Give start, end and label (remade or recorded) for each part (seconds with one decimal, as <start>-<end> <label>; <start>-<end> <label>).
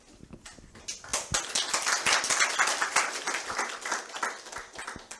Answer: 0.0-5.2 recorded